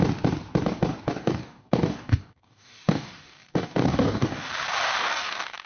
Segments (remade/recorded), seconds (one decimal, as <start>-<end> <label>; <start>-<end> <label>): 0.0-1.1 recorded; 1.1-4.5 remade; 4.5-5.0 recorded; 5.0-5.7 remade